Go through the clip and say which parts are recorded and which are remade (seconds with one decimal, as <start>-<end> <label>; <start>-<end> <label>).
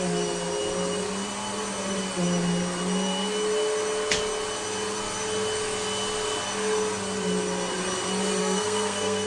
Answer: 0.0-8.4 recorded; 8.4-9.3 remade